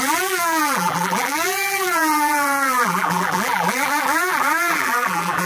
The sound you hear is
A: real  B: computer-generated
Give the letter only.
B